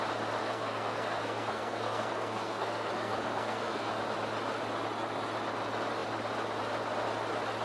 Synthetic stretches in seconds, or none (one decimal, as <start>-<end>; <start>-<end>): 0.4-3.9